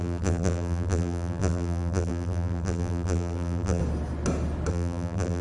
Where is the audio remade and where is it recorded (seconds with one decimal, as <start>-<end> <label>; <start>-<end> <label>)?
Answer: 0.0-3.8 remade; 3.8-4.7 recorded; 4.7-5.4 remade